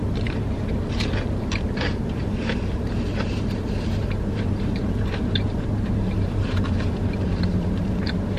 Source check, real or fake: fake